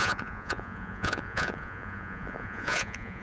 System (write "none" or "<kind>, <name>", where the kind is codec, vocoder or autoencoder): vocoder, Vocos